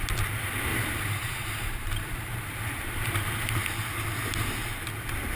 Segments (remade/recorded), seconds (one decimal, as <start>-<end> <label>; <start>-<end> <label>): 0.0-0.7 recorded; 0.7-2.9 remade; 2.9-5.4 recorded

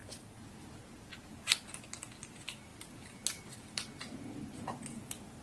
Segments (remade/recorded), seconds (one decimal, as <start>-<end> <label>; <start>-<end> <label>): 0.0-2.7 recorded; 2.7-3.2 remade; 3.2-5.4 recorded

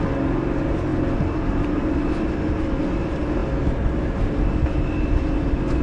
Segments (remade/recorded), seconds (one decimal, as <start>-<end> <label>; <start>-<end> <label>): 0.0-5.8 recorded

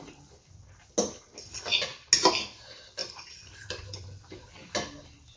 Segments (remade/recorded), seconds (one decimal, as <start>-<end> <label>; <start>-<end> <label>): 0.0-3.0 recorded; 3.0-4.5 remade; 4.5-5.4 recorded

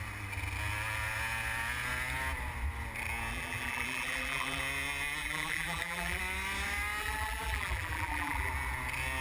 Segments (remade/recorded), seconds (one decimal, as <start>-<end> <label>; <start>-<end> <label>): 0.0-3.3 recorded; 3.3-4.6 remade; 4.6-5.2 recorded; 5.2-6.2 remade; 6.2-7.0 recorded; 7.0-8.5 remade; 8.5-9.2 recorded

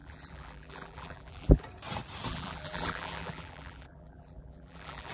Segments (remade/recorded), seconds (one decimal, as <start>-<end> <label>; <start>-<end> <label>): 0.0-1.6 remade; 1.6-2.3 recorded; 2.3-5.1 remade